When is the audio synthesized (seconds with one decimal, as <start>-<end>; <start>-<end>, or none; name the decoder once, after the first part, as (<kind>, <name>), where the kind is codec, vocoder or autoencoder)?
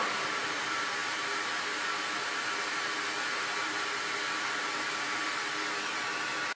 none